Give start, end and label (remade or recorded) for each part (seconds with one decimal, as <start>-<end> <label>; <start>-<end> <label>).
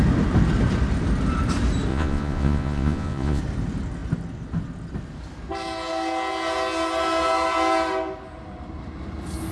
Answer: 0.0-1.9 recorded; 1.9-3.4 remade; 3.4-9.5 recorded